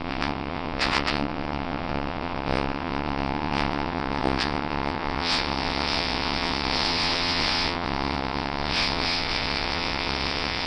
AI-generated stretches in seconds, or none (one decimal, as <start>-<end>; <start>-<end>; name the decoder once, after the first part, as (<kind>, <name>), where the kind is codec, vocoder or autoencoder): 0.0-10.7 (vocoder, WaveNeXt)